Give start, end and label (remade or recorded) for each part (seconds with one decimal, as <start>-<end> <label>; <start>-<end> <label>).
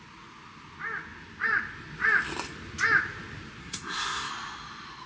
0.0-3.6 recorded; 3.6-4.3 remade; 4.3-5.1 recorded